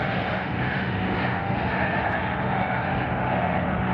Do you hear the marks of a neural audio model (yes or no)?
yes